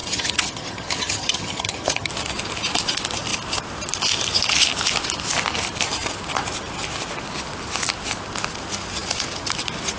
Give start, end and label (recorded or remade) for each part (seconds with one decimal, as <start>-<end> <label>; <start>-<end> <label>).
0.0-2.1 remade; 2.1-10.0 recorded